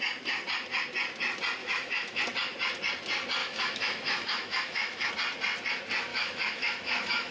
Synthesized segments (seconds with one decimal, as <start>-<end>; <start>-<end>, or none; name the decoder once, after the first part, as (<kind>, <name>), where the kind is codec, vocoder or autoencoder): 1.6-2.2 (autoencoder, DAC-VAE); 3.4-5.1; 6.1-7.3